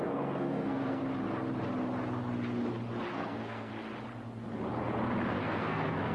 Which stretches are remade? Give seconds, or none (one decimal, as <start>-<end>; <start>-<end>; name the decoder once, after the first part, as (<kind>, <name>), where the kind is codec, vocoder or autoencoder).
0.0-1.0 (codec, SNAC); 3.1-3.7; 5.3-6.1